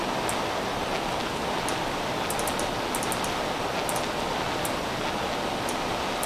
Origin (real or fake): real